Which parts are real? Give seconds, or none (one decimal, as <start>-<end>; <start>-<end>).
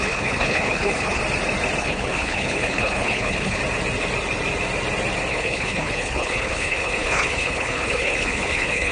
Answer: 1.2-1.8; 3.6-5.3